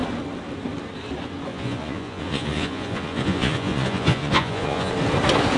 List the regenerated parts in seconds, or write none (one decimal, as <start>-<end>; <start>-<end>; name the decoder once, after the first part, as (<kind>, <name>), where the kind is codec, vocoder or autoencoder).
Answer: 1.5-4.9 (vocoder, Vocos)